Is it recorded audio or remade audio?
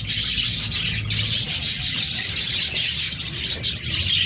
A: recorded